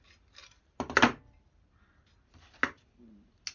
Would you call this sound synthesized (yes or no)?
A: no